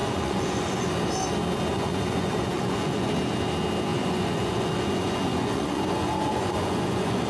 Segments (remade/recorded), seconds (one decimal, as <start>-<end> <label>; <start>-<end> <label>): 0.0-0.9 remade; 0.9-1.7 recorded; 1.7-3.1 remade; 3.1-3.9 recorded; 3.9-7.3 remade